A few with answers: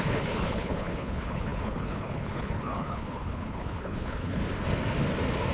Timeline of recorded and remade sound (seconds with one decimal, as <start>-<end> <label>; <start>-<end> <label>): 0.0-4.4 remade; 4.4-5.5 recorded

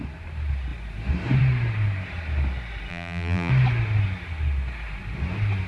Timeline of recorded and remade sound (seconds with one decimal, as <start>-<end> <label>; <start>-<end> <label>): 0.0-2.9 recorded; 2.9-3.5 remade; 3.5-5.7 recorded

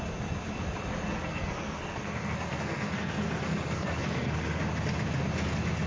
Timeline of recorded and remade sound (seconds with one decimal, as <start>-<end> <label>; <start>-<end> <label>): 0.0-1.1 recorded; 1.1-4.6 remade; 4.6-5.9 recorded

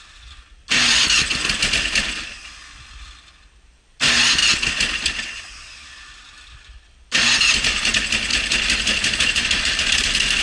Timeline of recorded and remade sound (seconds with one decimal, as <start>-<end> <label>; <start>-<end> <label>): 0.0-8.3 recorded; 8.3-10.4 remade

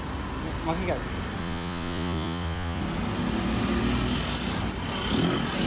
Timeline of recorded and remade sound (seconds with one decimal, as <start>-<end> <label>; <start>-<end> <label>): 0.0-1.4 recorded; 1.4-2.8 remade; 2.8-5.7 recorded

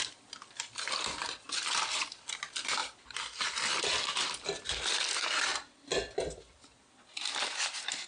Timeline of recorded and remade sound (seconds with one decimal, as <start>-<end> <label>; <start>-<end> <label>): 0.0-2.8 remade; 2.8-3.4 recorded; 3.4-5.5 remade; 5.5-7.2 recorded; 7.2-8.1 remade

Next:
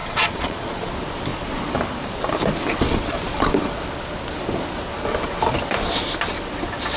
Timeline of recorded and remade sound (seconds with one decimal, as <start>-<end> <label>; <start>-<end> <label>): 0.0-0.9 remade; 0.9-7.0 recorded